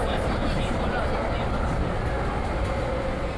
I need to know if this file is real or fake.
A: real